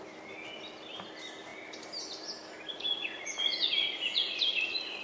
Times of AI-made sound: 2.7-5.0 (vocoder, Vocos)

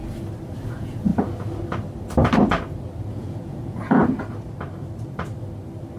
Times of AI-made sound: 0.7-1.1 (vocoder, Vocos); 3.1-4.0